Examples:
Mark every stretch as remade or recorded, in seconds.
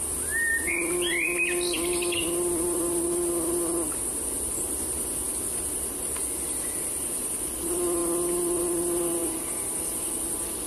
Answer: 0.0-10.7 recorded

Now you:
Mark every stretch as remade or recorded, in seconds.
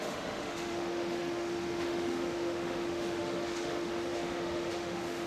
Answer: 0.0-5.3 remade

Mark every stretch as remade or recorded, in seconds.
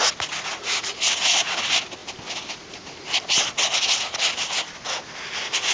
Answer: 0.0-5.7 recorded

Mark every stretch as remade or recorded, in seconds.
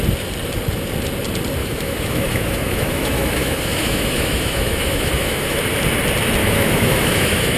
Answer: 0.0-1.6 recorded; 1.6-5.6 remade; 5.6-6.4 recorded; 6.4-7.6 remade